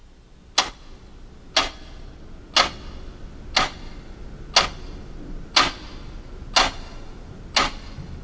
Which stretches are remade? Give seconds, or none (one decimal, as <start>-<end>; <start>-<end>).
none